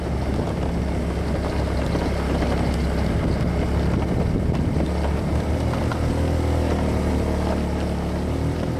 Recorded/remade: recorded